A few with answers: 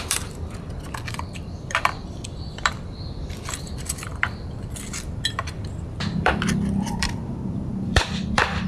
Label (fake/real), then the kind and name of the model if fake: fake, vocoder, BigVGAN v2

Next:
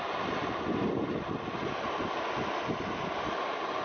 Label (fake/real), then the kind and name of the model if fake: real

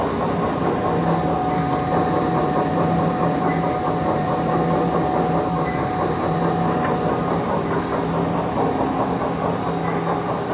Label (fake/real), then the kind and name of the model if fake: real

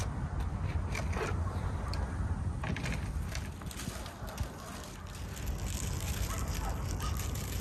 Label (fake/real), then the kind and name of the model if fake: real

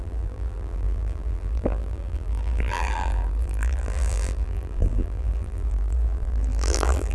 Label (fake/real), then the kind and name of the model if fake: fake, vocoder, BigVGAN v2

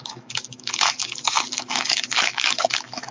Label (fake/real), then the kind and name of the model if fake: fake, codec, DAC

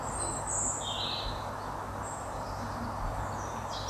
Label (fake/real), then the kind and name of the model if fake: real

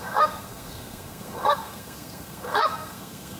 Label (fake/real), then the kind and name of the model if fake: fake, codec, SNAC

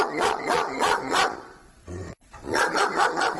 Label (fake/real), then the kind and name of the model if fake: fake, vocoder, Vocos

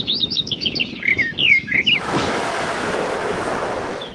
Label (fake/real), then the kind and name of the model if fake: fake, autoencoder, DAC-VAE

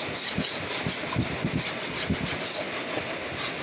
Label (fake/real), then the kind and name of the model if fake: real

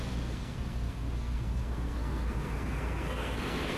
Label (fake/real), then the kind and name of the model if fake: fake, codec, SNAC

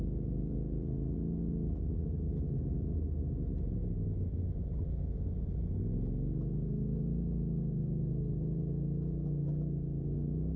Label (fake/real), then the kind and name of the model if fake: real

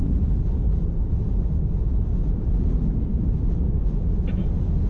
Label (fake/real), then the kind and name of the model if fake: real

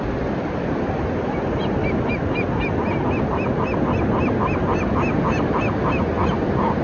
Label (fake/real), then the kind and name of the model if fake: real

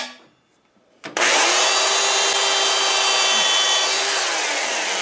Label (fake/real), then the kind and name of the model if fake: real